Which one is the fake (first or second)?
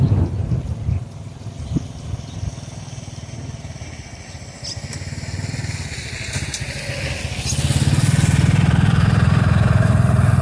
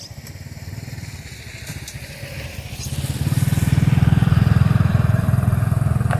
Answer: second